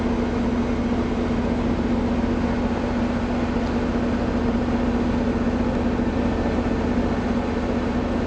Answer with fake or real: real